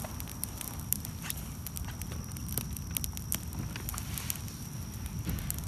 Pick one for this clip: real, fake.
real